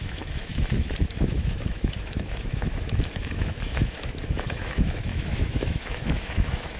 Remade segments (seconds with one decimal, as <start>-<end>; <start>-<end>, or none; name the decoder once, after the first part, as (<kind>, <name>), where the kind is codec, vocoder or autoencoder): 0.0-6.8 (autoencoder, DAC-VAE)